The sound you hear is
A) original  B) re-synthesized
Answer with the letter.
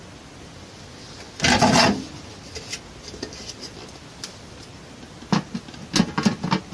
A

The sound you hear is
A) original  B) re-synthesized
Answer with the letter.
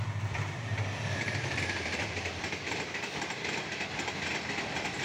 B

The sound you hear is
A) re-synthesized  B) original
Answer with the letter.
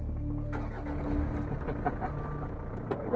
B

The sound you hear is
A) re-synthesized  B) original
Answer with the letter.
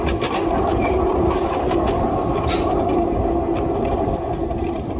B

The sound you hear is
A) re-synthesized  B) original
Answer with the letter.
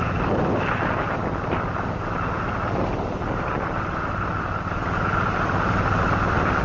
B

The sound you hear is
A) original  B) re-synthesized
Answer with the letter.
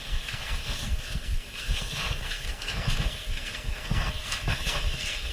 B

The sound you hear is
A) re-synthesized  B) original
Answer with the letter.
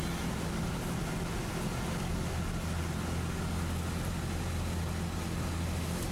B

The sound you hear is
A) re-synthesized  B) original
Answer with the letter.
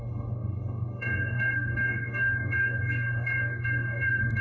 A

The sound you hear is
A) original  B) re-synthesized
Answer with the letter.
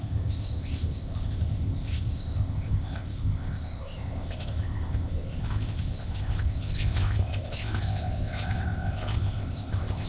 B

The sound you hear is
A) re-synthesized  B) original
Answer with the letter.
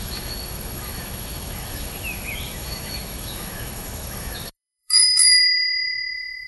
A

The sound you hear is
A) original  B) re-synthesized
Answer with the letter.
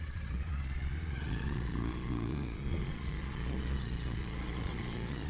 B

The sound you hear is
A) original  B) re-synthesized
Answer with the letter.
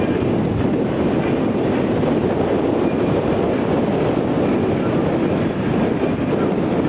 A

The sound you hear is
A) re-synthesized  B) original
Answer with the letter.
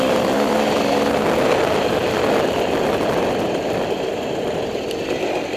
B